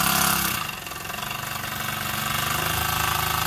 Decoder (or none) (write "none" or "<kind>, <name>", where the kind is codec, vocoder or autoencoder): none